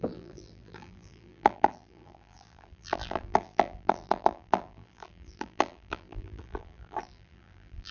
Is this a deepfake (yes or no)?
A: yes